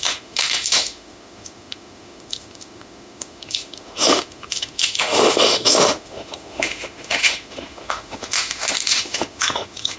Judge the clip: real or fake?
fake